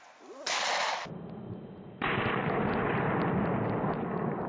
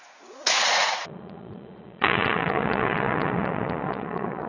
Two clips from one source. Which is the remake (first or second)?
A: second